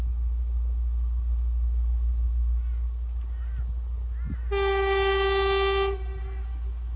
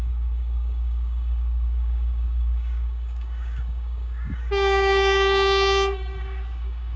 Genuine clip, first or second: first